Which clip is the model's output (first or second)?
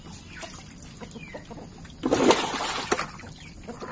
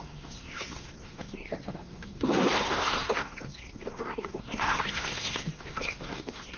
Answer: second